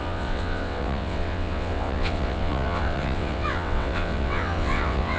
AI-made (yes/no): yes